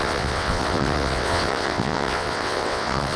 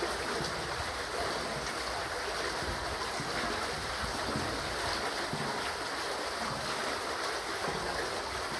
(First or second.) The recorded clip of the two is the second